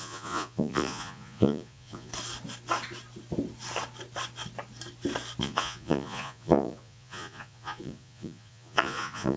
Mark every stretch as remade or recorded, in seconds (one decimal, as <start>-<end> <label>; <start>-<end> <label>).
0.0-2.1 remade; 2.1-5.4 recorded; 5.4-9.4 remade